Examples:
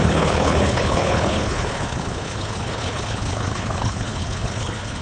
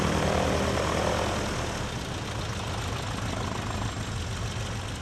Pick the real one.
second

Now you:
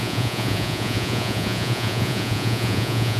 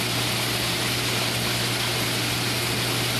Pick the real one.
second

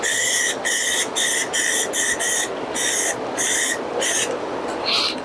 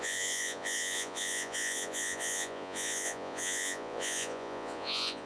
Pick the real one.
first